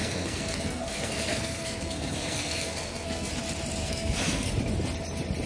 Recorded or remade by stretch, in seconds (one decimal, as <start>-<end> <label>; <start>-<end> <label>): 0.0-3.3 remade; 3.3-3.8 recorded; 3.8-4.5 remade; 4.5-5.5 recorded